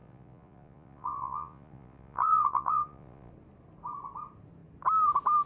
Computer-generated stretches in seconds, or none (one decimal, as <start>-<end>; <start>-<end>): 0.0-3.3